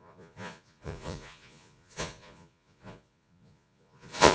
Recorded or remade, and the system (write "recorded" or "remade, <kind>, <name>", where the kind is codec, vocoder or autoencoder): remade, vocoder, Vocos